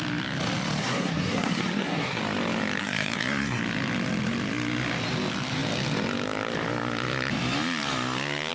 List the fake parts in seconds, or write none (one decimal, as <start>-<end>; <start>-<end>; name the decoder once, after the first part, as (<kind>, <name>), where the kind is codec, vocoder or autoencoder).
0.8-2.2 (codec, SNAC); 2.8-3.6